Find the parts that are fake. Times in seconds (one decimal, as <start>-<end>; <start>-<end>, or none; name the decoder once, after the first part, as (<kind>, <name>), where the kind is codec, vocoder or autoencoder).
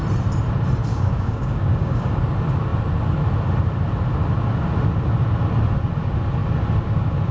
0.9-2.2 (codec, DAC)